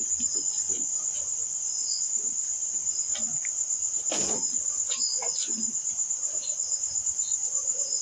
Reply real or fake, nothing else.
real